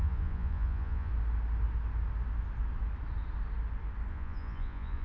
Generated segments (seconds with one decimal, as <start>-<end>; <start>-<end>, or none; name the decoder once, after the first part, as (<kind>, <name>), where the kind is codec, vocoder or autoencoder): 0.0-1.1 (vocoder, Vocos); 4.1-5.0